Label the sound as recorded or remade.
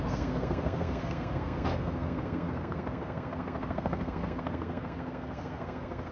remade